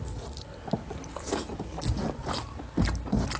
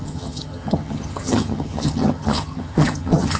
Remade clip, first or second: second